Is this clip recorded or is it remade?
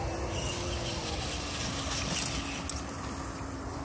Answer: recorded